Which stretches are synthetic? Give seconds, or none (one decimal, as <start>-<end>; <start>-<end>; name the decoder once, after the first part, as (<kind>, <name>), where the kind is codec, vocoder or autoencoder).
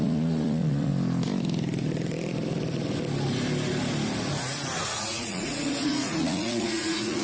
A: 0.0-0.9 (vocoder, Vocos); 4.8-7.2